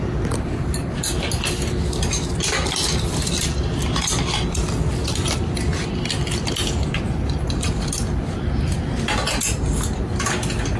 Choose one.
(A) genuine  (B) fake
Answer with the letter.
A